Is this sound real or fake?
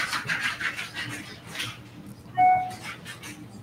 real